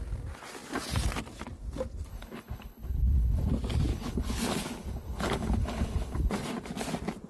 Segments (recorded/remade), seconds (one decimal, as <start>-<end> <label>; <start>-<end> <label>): 0.0-2.1 recorded; 2.1-3.5 remade; 3.5-3.9 recorded; 3.9-6.3 remade; 6.3-7.3 recorded